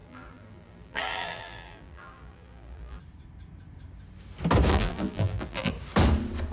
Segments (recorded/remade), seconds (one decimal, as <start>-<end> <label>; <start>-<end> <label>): 0.0-3.0 remade; 3.0-4.7 recorded; 4.7-5.7 remade; 5.7-6.5 recorded